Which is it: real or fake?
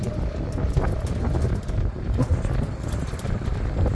real